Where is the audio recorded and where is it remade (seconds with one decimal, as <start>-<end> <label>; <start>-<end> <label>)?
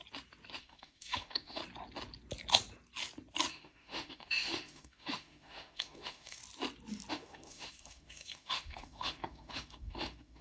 0.0-0.6 recorded; 0.6-1.6 remade; 1.6-3.5 recorded; 3.5-6.4 remade; 6.4-7.1 recorded; 7.1-10.4 remade